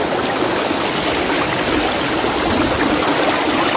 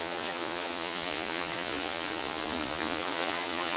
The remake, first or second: second